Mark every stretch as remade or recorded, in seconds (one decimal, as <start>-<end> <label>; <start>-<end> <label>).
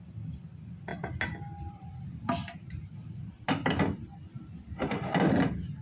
0.0-5.8 recorded